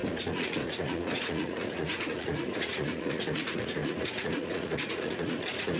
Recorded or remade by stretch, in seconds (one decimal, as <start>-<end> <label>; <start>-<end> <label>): 0.0-5.8 remade